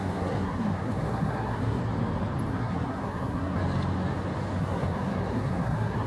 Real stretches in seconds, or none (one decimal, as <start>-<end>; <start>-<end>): 1.8-2.5; 3.6-4.6